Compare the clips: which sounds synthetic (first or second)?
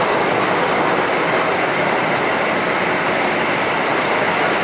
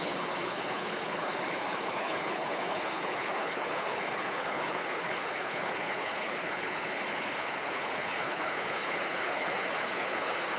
second